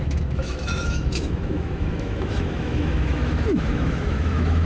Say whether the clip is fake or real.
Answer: fake